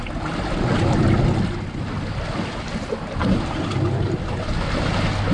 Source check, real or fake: real